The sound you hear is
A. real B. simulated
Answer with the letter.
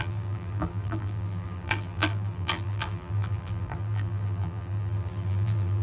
B